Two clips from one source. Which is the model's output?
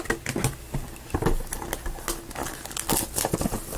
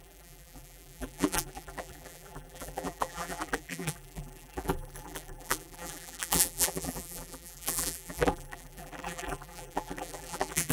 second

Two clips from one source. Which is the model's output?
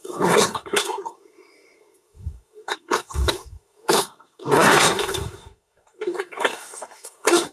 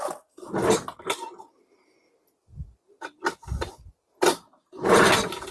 first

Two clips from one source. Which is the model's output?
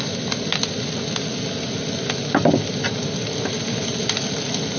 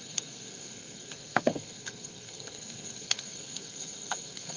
second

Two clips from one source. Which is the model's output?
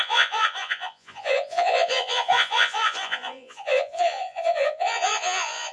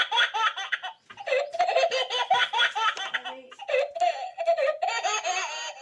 first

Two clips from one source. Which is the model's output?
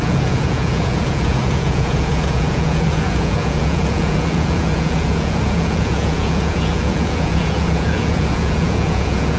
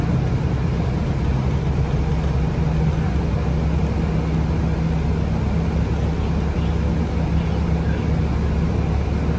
first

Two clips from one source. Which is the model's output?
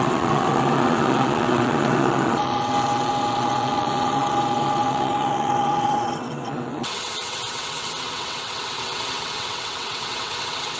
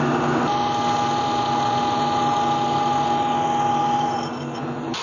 first